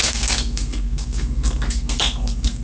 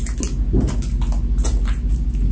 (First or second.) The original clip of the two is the second